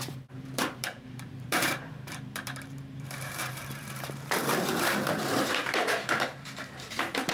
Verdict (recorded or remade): remade